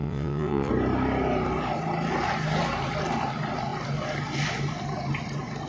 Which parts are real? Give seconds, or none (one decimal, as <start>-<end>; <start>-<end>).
0.7-5.7